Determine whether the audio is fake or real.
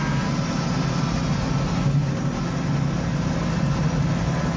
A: real